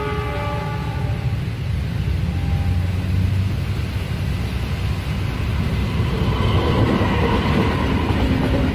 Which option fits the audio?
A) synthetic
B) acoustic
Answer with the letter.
B